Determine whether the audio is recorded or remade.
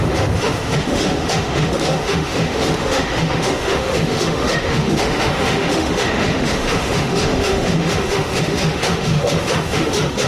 remade